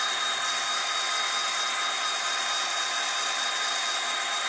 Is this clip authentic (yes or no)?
yes